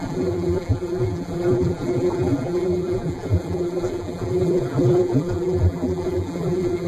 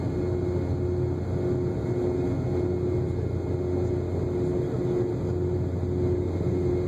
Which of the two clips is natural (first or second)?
second